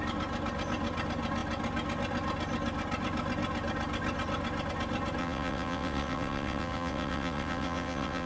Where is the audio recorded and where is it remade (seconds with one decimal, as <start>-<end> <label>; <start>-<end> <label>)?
0.0-5.2 recorded; 5.2-8.3 remade